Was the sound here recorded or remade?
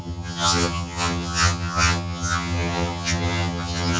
remade